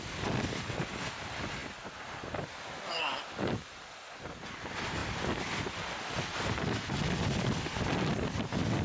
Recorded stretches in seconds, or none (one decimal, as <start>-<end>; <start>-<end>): 0.0-8.8